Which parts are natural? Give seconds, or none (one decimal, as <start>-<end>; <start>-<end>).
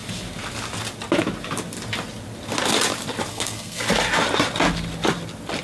0.0-3.3; 3.8-5.6